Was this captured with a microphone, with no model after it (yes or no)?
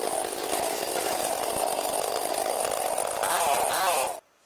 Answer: yes